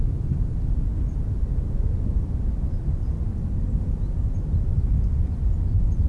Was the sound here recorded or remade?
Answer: recorded